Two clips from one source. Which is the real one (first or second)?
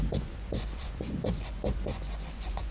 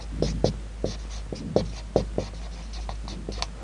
second